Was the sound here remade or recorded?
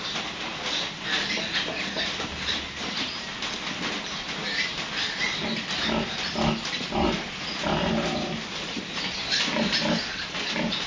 recorded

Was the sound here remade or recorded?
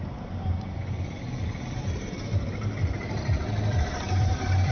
recorded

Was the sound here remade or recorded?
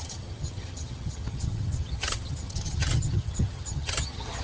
remade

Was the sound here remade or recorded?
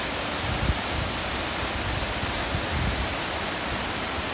recorded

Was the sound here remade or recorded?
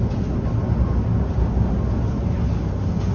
recorded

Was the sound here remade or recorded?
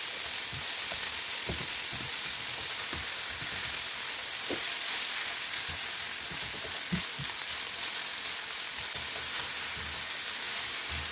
recorded